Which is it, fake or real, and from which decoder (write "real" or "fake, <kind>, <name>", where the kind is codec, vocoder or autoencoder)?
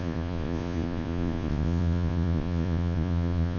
fake, vocoder, Vocos